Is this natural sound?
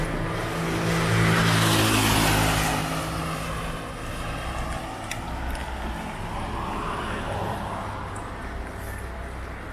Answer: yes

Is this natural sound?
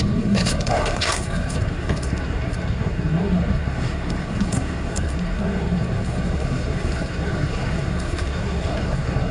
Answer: no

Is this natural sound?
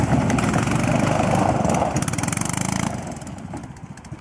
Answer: yes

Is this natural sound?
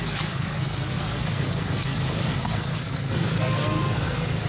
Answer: no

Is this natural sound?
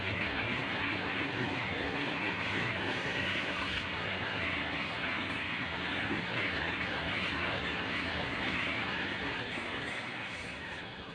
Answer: no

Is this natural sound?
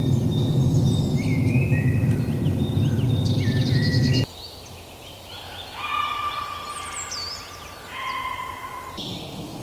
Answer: yes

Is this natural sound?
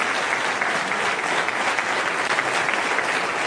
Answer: yes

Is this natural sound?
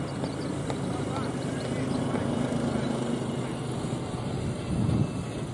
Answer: yes